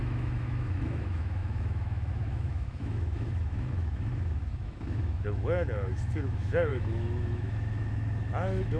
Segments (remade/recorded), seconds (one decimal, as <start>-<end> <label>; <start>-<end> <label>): 0.0-8.8 remade